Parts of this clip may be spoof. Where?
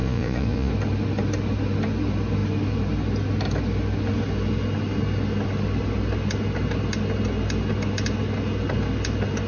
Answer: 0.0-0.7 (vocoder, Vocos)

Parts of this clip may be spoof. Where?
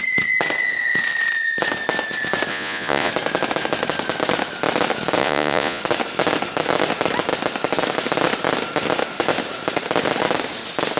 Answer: 2.5-3.1 (vocoder, Vocos); 5.2-5.8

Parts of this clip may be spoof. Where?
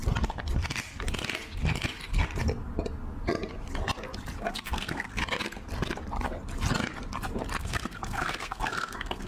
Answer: 4.4-5.2 (codec, SNAC); 7.6-9.3